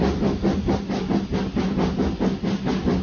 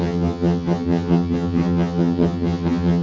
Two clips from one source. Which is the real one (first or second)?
first